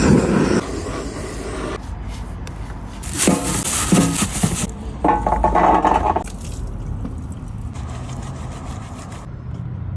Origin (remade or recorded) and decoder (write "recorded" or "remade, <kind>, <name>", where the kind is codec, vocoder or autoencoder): recorded